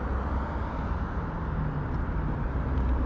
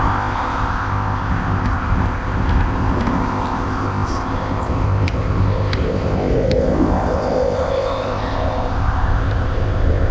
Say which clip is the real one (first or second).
first